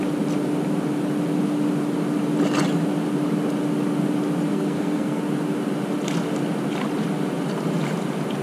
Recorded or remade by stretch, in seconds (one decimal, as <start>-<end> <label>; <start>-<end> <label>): 0.0-4.5 recorded; 4.5-5.2 remade; 5.2-8.4 recorded